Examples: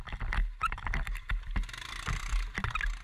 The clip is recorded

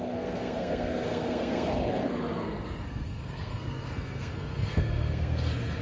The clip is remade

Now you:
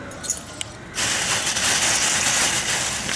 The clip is recorded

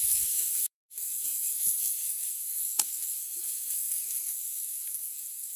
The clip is remade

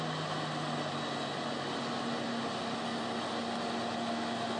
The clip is recorded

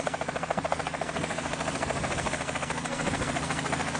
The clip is remade